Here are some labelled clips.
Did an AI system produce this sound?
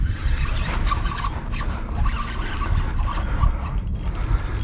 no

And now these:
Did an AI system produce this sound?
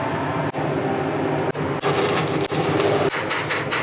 no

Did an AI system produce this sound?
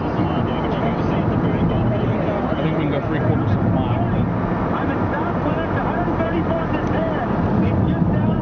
no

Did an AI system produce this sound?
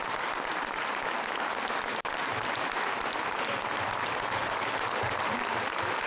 no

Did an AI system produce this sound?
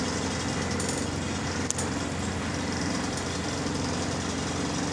no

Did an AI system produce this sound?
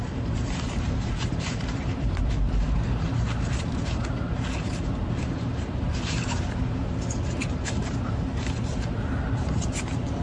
yes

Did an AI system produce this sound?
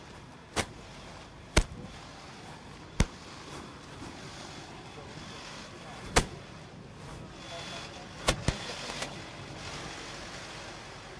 no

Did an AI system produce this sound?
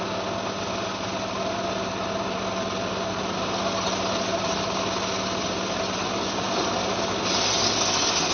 no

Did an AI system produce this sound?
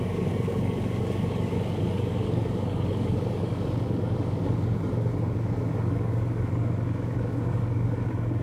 yes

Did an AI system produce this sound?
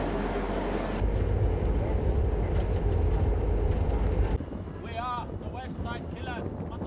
no